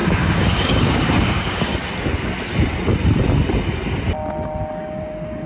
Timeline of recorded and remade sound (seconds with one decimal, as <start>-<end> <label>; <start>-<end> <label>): 0.0-1.7 remade; 1.7-5.0 recorded; 5.0-5.5 remade

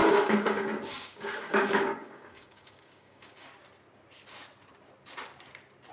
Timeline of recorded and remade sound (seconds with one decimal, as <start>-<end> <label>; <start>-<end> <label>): 0.0-3.5 remade; 3.5-5.9 recorded